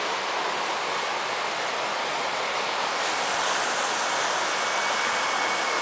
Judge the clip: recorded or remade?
recorded